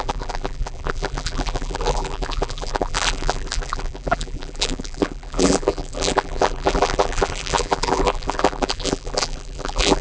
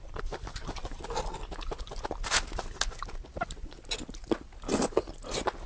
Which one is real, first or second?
second